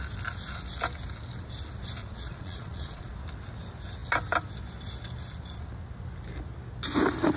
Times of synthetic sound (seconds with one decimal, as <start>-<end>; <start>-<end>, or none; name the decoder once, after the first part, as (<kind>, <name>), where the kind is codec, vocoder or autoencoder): 2.0-3.1 (vocoder, Vocos)